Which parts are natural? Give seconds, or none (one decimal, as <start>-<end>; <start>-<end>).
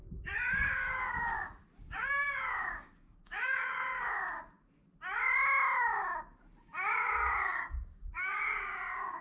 1.3-1.9; 4.1-6.6